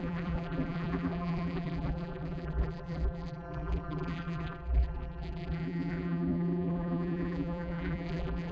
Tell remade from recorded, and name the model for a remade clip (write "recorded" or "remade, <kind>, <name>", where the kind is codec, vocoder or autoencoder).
remade, vocoder, BigVGAN v2